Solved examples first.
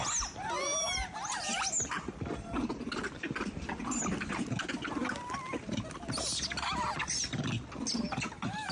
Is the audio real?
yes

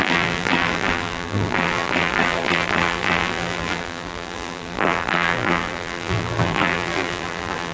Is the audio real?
no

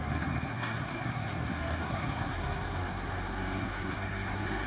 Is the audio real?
no